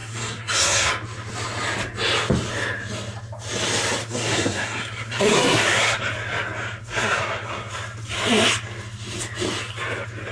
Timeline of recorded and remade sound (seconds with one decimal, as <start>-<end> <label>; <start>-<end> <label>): 0.0-0.9 remade; 0.9-4.0 recorded; 4.0-6.0 remade; 6.0-6.8 recorded; 6.8-7.7 remade; 7.7-10.3 recorded